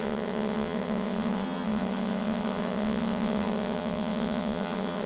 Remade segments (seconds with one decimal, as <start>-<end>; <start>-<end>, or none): 0.0-5.1